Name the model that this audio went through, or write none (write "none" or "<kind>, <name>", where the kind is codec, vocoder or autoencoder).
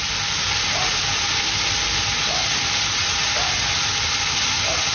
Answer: none